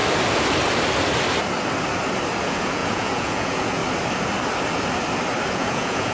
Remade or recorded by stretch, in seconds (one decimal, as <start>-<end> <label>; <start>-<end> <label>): 0.0-2.4 recorded; 2.4-3.8 remade; 3.8-5.5 recorded; 5.5-6.1 remade